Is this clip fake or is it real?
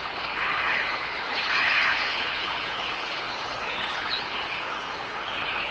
fake